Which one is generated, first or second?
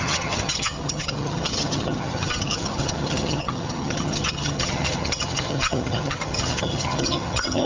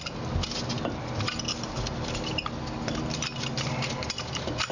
first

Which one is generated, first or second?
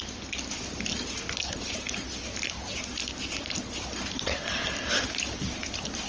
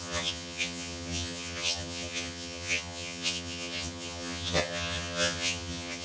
second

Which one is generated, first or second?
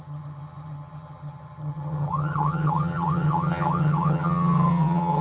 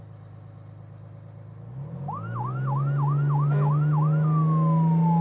first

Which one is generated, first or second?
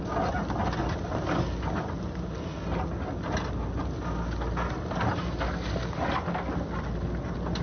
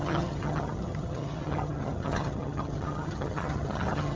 second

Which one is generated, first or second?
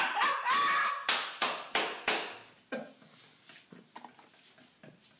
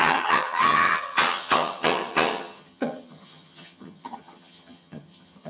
second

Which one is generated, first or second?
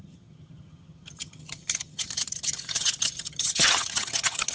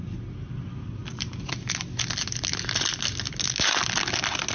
first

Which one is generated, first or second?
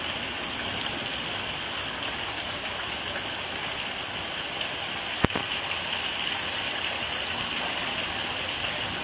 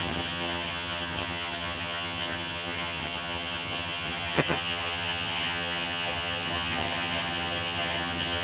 second